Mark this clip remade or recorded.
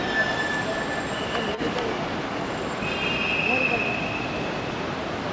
recorded